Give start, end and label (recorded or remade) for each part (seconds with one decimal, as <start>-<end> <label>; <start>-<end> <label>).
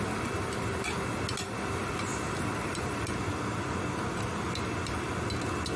0.0-5.8 recorded